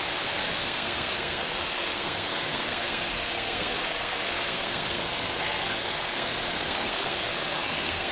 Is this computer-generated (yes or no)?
yes